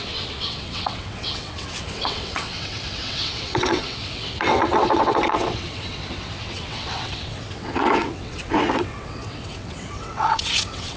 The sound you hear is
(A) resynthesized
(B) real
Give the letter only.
A